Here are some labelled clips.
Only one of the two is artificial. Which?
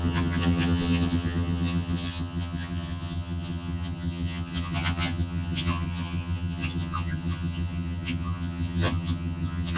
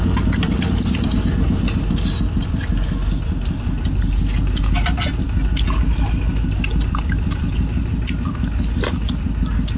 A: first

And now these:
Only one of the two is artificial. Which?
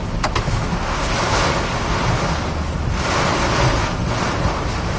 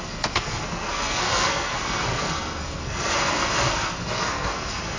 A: second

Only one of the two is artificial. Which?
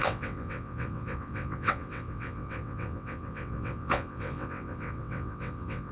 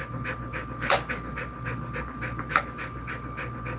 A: first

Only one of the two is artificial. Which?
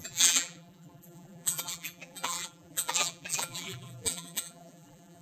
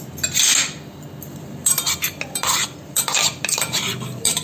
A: first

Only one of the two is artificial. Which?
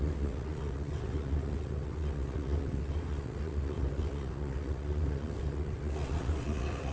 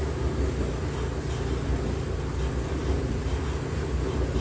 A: first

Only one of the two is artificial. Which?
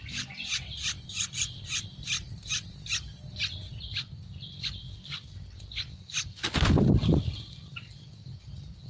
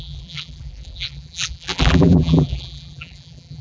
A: second